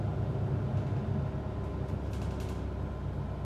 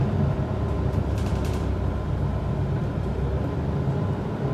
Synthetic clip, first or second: second